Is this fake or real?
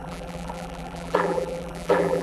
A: fake